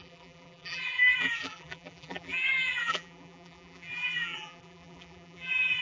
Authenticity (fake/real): fake